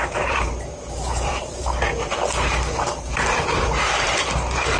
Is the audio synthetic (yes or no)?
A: yes